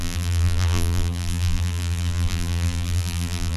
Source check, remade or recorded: remade